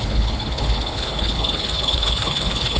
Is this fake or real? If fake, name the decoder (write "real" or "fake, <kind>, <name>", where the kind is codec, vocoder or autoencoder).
fake, codec, HILCodec